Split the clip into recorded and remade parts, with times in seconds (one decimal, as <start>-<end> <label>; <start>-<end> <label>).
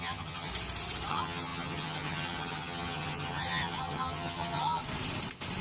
0.0-0.5 remade; 0.5-1.1 recorded; 1.1-4.8 remade; 4.8-5.6 recorded